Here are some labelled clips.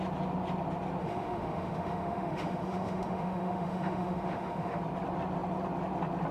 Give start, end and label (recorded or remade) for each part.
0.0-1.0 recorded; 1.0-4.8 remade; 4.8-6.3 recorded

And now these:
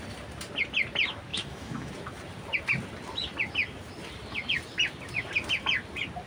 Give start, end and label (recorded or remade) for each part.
0.0-1.3 recorded; 1.3-1.9 remade; 1.9-6.3 recorded

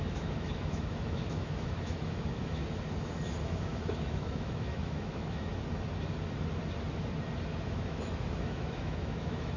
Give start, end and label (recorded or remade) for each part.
0.0-2.6 remade; 2.6-3.4 recorded; 3.4-5.5 remade; 5.5-7.7 recorded; 7.7-9.6 remade

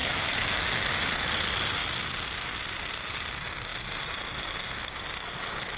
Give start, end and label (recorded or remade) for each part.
0.0-0.9 remade; 0.9-5.8 recorded

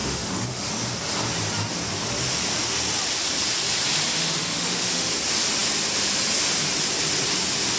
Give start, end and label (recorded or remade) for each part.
0.0-0.7 remade; 0.7-4.1 recorded; 4.1-5.1 remade; 5.1-7.8 recorded

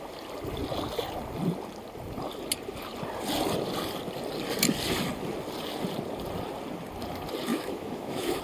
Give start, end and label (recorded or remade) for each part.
0.0-7.5 recorded; 7.5-8.4 remade